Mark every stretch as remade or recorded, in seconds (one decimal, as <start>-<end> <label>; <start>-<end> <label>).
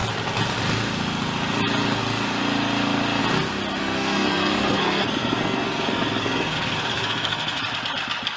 0.0-3.8 recorded; 3.8-7.6 remade; 7.6-8.4 recorded